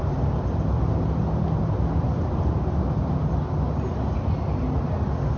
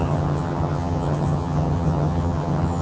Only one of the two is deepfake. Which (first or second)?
second